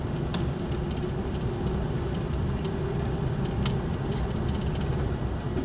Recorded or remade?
recorded